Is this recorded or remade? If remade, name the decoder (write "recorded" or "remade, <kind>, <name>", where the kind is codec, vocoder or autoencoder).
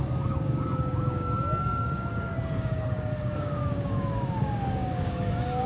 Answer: remade, codec, DAC